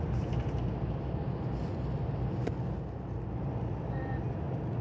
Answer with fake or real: real